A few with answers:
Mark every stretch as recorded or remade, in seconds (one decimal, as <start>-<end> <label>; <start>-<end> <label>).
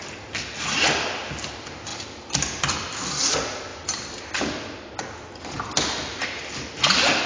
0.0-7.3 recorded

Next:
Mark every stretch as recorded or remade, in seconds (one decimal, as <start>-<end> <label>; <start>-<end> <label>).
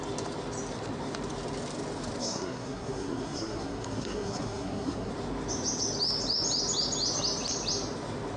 0.0-2.2 recorded; 2.2-5.1 remade; 5.1-8.4 recorded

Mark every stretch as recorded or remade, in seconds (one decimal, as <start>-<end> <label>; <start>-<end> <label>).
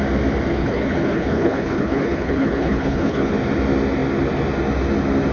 0.0-0.5 recorded; 0.5-3.3 remade; 3.3-5.3 recorded